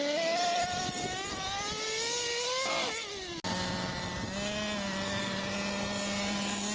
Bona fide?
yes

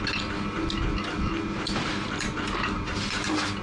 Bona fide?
yes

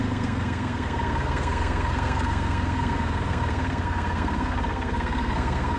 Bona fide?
no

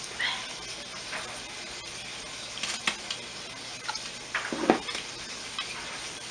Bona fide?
yes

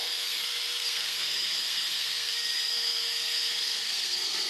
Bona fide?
no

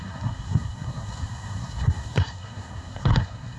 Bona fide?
no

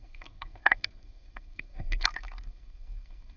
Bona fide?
no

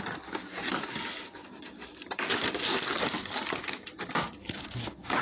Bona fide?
yes